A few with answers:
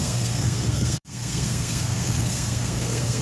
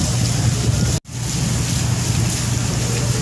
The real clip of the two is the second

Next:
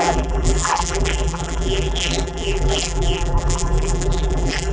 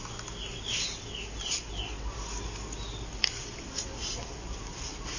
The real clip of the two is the second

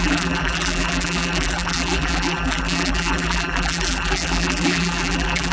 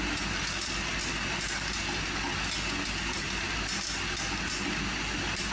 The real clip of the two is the second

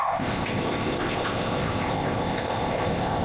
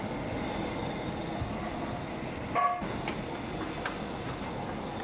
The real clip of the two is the second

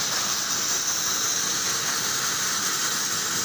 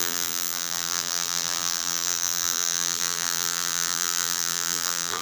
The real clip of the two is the first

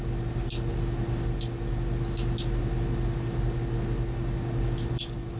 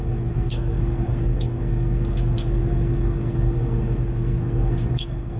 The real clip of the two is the first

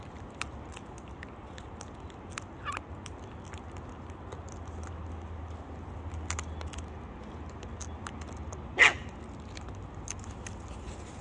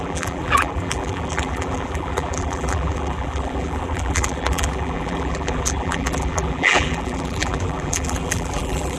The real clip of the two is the first